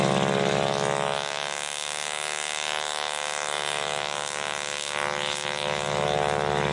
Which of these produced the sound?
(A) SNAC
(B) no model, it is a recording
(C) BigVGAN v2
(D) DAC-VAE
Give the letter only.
B